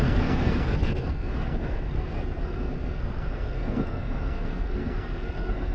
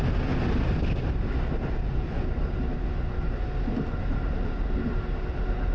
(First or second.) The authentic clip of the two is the second